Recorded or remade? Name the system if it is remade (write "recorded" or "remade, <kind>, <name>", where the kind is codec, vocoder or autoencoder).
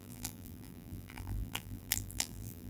remade, vocoder, BigVGAN v2